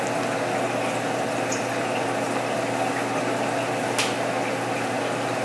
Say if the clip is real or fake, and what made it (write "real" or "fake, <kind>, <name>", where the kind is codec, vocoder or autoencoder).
real